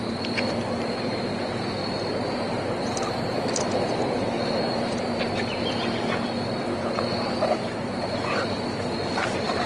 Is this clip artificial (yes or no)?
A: yes